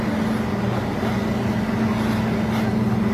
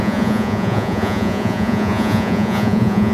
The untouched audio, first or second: first